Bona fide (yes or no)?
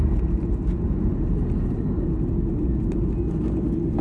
yes